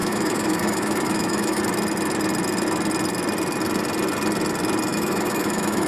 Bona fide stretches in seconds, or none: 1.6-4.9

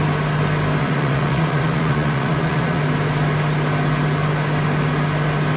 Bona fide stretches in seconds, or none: 0.0-0.8; 2.8-5.6

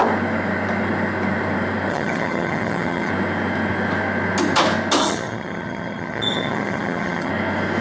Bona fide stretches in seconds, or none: 0.0-1.9; 3.1-5.0; 7.3-7.8

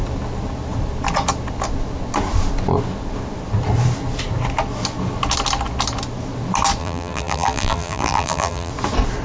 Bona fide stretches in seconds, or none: 0.0-6.8; 8.7-9.2

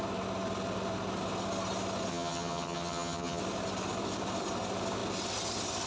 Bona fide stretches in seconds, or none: 0.0-2.1; 3.4-5.9

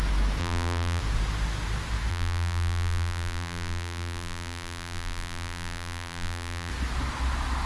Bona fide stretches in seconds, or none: 0.0-0.4; 1.0-2.1; 6.7-7.7

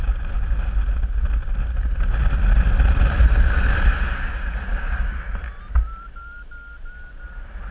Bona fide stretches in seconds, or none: 0.0-4.7; 5.3-7.7